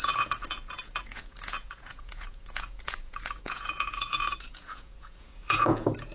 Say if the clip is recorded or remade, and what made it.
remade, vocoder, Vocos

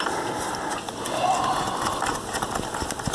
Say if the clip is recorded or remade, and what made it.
recorded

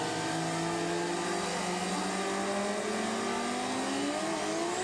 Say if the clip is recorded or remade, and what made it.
recorded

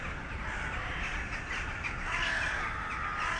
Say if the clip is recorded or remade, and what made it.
recorded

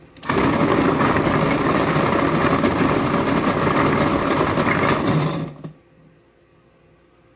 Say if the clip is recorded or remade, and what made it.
recorded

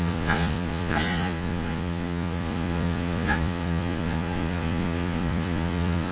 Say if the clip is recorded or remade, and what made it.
remade, vocoder, Vocos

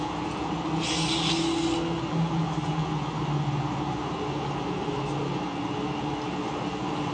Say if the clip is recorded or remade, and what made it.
recorded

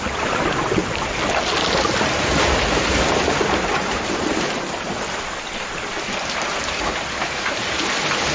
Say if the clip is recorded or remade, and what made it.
recorded